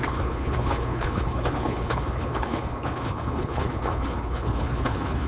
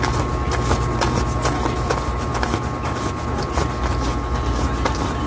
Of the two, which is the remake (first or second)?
first